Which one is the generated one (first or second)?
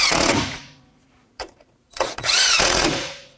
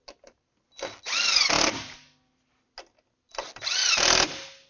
first